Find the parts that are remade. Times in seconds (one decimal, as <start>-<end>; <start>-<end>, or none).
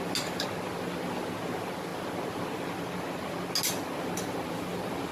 none